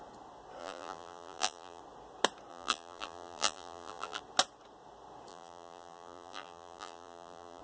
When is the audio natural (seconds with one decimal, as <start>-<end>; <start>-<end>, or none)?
0.0-0.6; 1.8-2.5; 4.2-5.3